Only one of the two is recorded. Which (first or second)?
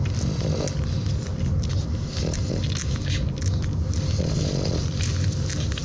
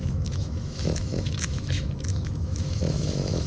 first